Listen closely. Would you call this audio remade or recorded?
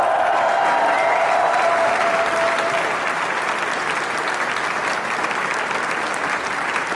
recorded